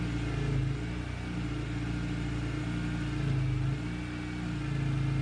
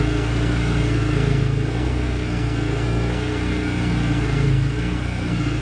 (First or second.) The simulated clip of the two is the second